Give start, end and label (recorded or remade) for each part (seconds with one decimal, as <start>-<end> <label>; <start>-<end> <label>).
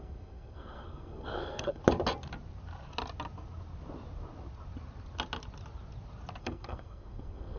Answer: 0.0-1.8 remade; 1.8-6.4 recorded; 6.4-7.6 remade